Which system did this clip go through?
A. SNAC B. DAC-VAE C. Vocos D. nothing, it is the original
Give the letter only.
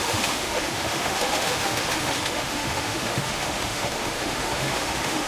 B